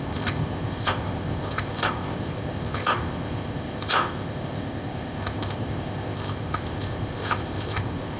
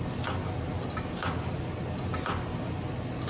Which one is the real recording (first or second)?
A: second